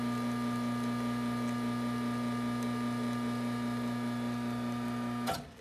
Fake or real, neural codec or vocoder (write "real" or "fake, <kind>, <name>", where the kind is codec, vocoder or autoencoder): real